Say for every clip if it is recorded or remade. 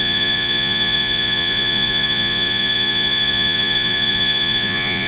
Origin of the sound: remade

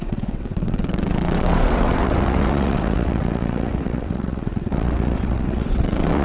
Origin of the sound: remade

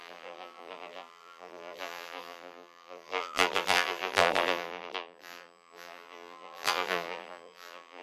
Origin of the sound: remade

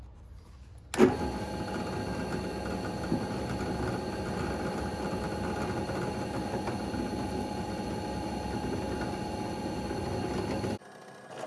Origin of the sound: recorded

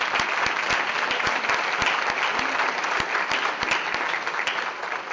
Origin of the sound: recorded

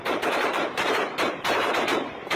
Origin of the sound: remade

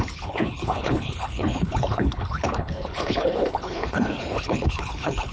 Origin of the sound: remade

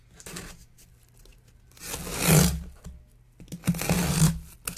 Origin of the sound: recorded